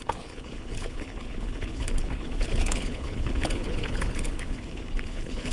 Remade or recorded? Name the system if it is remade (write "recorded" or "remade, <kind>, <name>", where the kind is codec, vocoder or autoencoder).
remade, codec, HILCodec